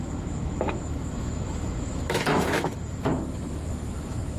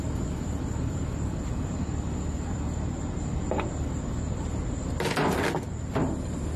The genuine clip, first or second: second